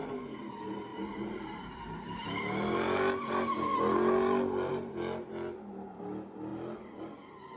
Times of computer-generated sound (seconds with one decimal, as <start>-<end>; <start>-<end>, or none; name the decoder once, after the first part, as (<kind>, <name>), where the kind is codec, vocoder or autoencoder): 0.9-2.4 (vocoder, BigVGAN v2)